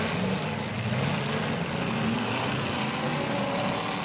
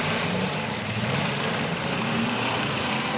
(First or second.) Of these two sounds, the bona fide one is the first